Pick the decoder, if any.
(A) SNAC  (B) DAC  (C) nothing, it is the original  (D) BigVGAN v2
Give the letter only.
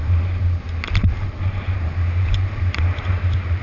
D